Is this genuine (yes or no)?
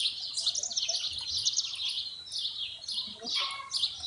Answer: yes